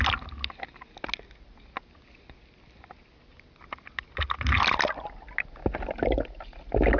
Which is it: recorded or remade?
recorded